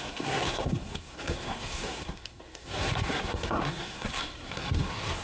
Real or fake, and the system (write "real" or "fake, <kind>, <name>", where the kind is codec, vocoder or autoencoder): fake, codec, SNAC